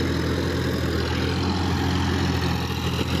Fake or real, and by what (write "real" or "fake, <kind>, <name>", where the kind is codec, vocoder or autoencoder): real